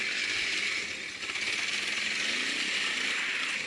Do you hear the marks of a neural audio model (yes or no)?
no